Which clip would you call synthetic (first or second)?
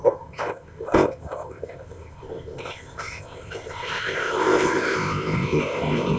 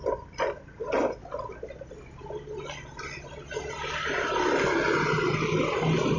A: first